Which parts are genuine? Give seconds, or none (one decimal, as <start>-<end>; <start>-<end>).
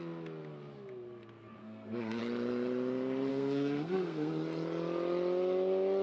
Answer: 0.0-1.6; 2.2-3.3; 4.3-6.0